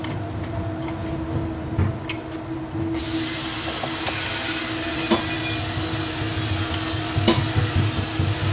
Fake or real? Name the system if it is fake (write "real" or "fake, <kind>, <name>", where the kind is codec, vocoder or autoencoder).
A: real